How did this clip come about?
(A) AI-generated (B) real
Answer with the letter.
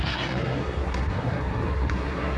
A